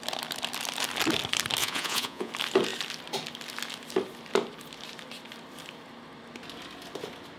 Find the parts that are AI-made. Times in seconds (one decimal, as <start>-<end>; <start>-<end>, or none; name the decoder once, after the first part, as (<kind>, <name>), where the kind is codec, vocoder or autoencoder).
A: 1.6-2.3 (vocoder, Vocos)